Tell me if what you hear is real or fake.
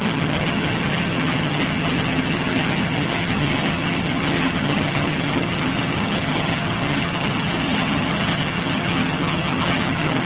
fake